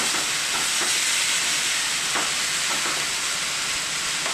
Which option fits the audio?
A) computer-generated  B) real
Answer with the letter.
B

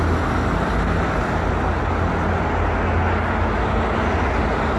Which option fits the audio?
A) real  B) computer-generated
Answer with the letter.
A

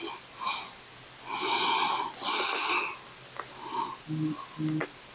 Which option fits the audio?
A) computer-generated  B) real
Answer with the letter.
B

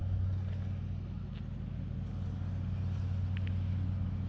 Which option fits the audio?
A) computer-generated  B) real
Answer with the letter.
B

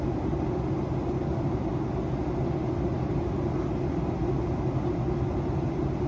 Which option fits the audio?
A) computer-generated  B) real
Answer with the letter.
B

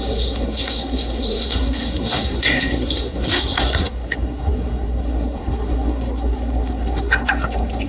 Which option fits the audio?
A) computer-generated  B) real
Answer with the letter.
A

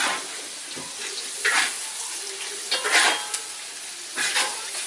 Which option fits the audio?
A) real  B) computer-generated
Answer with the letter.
A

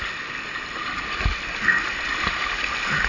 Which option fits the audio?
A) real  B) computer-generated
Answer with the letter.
A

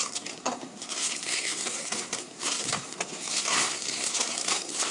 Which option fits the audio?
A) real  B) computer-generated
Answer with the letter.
B